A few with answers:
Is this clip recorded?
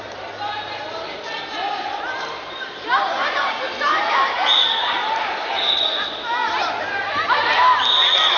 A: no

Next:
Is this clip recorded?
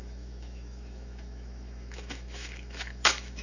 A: no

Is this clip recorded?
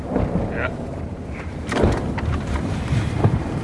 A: no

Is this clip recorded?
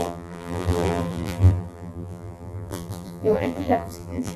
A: no